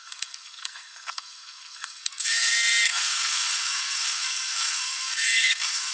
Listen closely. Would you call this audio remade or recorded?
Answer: remade